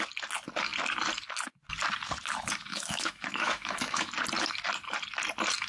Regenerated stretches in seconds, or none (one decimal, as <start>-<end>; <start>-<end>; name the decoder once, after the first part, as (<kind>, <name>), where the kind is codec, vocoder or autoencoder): 2.7-4.1 (autoencoder, DAC-VAE)